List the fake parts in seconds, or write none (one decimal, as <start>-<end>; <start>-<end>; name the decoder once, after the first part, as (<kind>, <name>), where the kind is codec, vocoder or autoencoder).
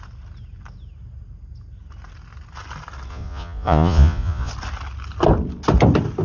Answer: 3.1-4.5 (vocoder, Vocos)